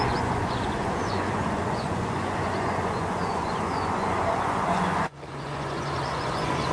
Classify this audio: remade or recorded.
remade